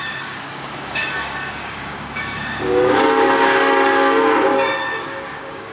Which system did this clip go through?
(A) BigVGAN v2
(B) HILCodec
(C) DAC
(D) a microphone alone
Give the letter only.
C